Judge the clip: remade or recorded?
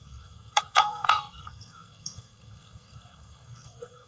remade